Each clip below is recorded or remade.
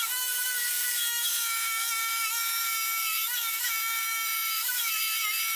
remade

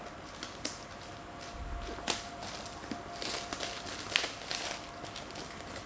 recorded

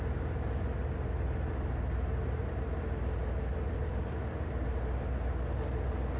recorded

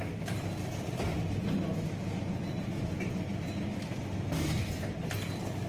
remade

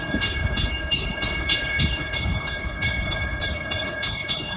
remade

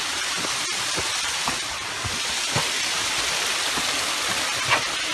recorded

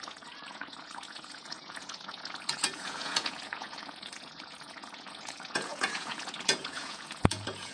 remade